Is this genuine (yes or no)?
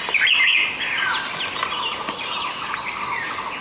yes